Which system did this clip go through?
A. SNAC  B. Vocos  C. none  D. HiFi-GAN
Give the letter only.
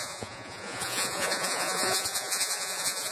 B